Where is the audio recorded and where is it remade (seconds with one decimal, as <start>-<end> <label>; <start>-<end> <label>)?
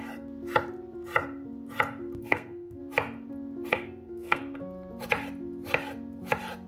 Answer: 0.0-2.2 recorded; 2.2-2.8 remade; 2.8-3.7 recorded; 3.7-4.4 remade; 4.4-6.7 recorded